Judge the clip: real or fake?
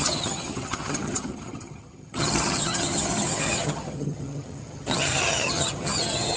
fake